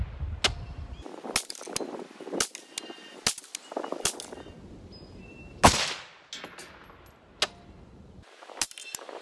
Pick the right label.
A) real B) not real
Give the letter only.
A